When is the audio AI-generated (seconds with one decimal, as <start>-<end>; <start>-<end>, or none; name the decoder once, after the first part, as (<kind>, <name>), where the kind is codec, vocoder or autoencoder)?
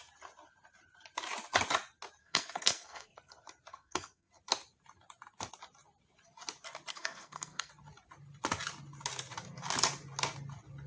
2.2-3.3 (codec, SNAC); 3.7-4.3; 6.9-7.7